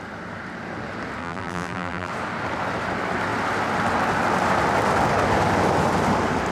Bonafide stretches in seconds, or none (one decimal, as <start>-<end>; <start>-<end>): 0.0-1.2; 2.1-6.5